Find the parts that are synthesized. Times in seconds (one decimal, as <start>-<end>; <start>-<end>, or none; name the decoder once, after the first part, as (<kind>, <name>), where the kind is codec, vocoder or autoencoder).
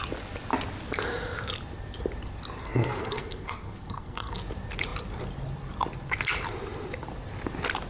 2.6-4.4 (codec, SNAC)